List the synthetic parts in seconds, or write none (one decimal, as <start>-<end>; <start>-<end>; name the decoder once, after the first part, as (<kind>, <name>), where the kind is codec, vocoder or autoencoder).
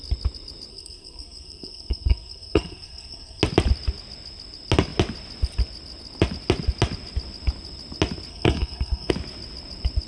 0.7-3.4 (codec, SNAC); 8.3-9.1